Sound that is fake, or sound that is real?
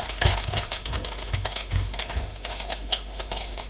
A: fake